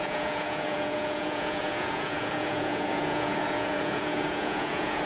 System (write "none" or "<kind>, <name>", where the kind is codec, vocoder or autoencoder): vocoder, Vocos